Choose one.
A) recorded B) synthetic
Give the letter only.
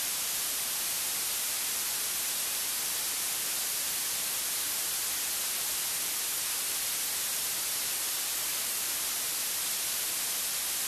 A